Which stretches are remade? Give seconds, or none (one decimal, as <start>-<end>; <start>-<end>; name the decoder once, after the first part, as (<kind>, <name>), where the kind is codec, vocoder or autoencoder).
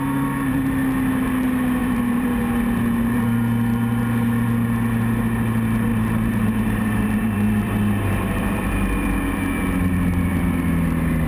1.8-2.4 (vocoder, BigVGAN v2); 5.9-8.7